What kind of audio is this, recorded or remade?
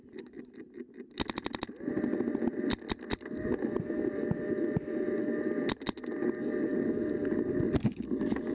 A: recorded